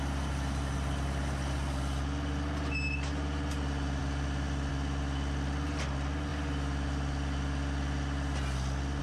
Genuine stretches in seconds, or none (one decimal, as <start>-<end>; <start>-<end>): 0.0-9.0